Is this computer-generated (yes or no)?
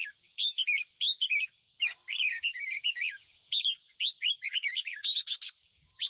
yes